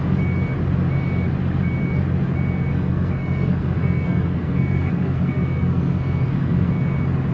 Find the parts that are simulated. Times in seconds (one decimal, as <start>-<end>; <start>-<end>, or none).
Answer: 2.7-6.7